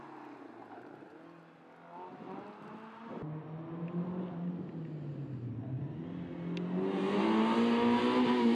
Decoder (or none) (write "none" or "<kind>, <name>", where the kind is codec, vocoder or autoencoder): none